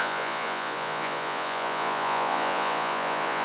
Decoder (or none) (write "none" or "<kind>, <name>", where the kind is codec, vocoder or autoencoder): vocoder, Vocos